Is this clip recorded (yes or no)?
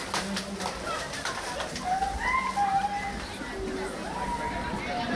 yes